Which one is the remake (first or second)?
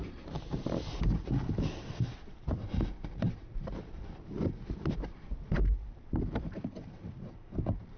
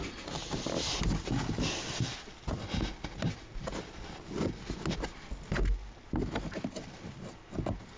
first